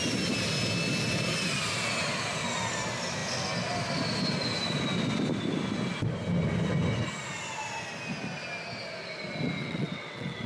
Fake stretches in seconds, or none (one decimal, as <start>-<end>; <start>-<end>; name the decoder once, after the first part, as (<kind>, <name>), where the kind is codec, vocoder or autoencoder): 9.6-10.5 (vocoder, WaveNeXt)